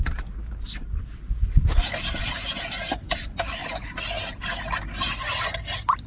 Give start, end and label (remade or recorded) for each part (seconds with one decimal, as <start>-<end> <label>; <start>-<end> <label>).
0.0-0.5 remade; 0.5-2.3 recorded; 2.3-3.6 remade; 3.6-6.1 recorded